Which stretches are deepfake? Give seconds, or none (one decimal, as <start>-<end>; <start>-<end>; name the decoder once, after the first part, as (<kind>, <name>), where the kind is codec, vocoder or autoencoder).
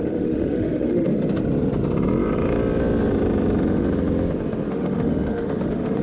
0.0-1.1 (autoencoder, DAC-VAE); 4.7-6.0